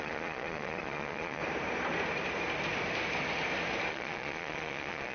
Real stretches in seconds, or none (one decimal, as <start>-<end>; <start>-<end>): 1.4-3.9